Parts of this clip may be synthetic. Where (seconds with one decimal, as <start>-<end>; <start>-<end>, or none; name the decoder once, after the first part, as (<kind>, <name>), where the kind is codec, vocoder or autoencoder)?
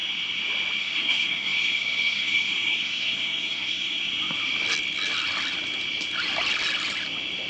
0.8-4.1 (codec, SNAC)